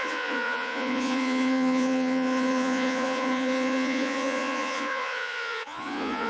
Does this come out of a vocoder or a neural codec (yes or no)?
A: yes